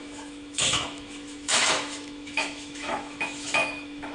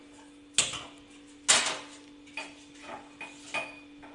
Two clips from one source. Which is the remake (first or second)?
first